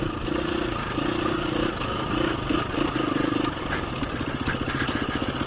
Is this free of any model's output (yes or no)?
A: yes